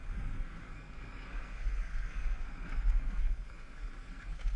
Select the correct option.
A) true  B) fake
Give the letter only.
B